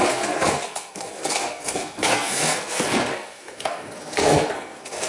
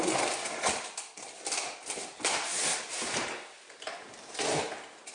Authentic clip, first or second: second